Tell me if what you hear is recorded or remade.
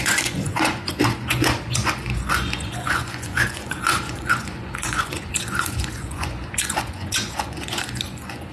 remade